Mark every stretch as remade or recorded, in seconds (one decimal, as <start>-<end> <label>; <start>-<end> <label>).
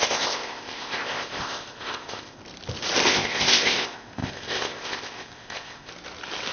0.0-2.4 remade; 2.4-3.1 recorded; 3.1-5.9 remade; 5.9-6.5 recorded